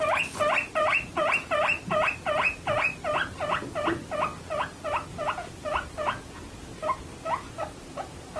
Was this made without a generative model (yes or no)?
no